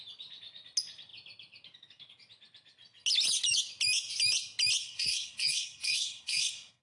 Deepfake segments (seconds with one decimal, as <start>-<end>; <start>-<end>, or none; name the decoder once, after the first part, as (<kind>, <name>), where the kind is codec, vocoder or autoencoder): 4.8-6.8 (codec, SNAC)